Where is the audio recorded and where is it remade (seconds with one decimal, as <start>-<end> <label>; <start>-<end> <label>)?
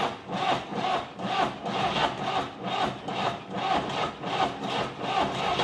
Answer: 0.0-5.6 recorded